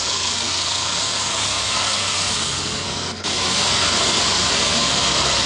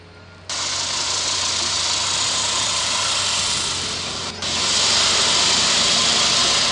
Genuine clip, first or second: second